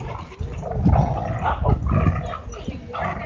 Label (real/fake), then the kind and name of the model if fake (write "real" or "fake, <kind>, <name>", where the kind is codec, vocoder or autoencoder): real